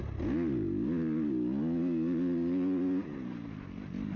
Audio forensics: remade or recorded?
recorded